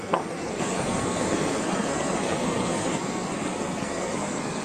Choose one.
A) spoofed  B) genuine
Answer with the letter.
A